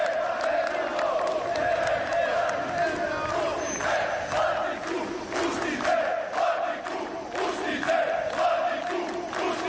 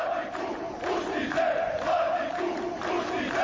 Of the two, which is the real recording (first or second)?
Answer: first